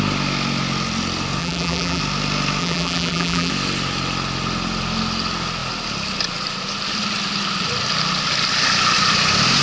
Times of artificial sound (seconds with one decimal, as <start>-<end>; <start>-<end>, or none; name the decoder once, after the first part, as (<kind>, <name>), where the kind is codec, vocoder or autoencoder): 1.4-2.0 (vocoder, BigVGAN v2); 2.6-3.5

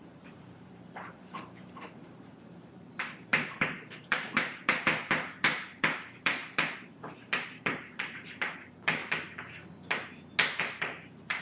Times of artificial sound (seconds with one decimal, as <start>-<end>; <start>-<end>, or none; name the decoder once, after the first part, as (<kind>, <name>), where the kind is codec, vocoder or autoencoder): 0.0-9.0 (vocoder, BigVGAN v2); 10.6-11.4